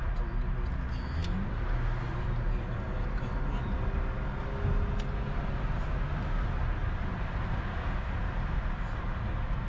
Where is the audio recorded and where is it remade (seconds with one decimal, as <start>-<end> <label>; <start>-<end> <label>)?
0.0-9.7 recorded